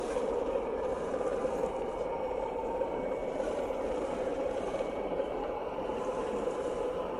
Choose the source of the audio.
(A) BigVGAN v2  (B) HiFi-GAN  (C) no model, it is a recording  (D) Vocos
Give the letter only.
A